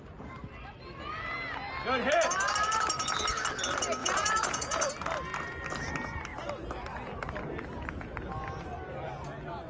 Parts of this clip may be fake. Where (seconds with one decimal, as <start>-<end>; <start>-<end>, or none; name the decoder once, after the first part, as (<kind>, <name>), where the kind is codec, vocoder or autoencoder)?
4.0-4.9 (vocoder, Vocos)